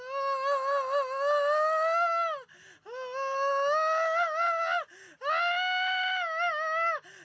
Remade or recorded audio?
recorded